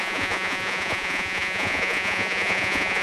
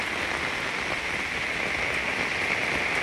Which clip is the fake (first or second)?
first